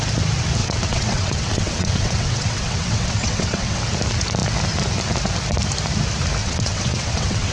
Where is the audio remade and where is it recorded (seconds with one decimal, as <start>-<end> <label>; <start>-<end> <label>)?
0.0-0.6 recorded; 0.6-3.8 remade; 3.8-6.4 recorded; 6.4-7.5 remade